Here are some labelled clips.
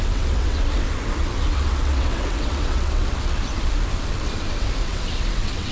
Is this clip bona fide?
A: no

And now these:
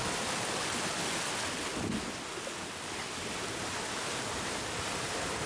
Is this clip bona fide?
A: yes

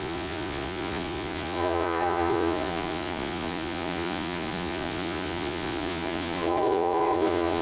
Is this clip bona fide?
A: no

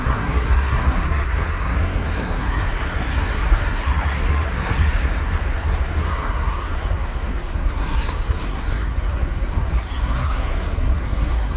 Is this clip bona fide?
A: no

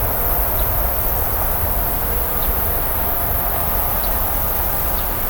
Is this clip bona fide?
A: no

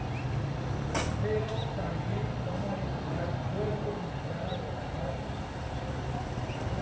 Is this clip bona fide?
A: yes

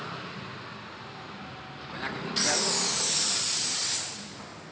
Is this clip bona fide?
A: yes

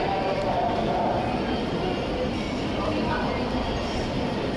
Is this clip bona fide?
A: yes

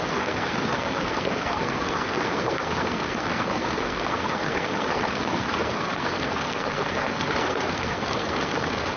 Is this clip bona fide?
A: no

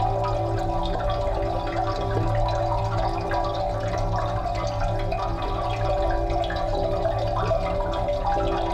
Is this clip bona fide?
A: yes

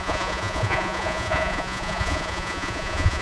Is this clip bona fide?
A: no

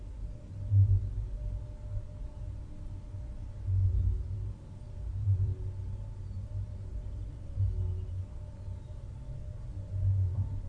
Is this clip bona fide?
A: yes